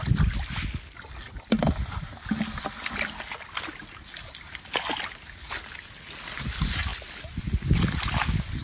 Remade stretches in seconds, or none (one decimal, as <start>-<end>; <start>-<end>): none